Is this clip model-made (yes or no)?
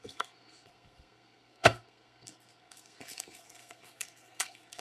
yes